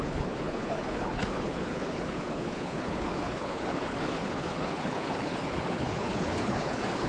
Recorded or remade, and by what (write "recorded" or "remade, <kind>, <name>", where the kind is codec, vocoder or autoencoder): remade, codec, HILCodec